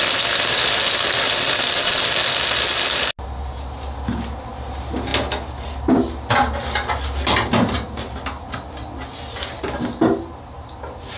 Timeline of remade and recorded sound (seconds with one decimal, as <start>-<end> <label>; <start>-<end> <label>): 0.0-11.2 recorded